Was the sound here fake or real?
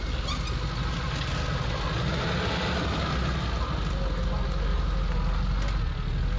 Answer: real